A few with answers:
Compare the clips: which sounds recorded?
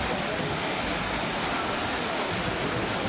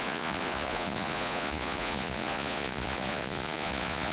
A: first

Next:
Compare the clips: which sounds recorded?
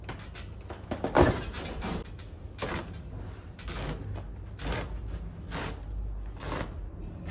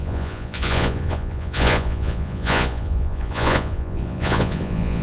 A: first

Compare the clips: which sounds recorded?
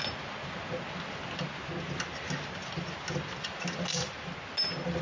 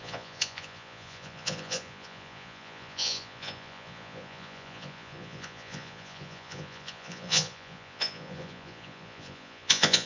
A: first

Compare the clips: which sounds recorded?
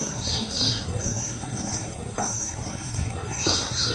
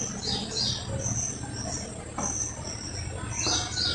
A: second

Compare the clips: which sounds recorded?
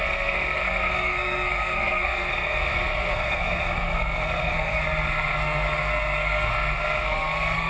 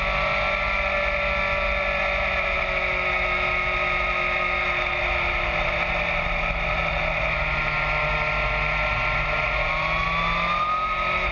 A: second